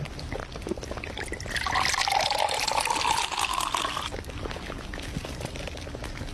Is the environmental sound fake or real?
real